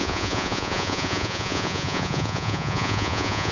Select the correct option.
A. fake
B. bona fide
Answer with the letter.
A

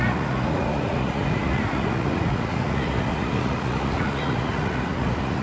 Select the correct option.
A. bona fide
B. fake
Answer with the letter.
B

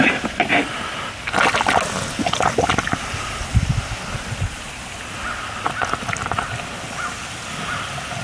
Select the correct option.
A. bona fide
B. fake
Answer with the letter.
A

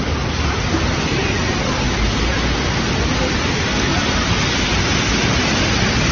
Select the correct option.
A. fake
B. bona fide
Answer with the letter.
B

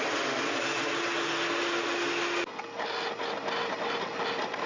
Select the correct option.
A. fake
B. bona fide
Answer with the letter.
B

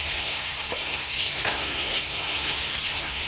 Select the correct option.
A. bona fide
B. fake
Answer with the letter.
B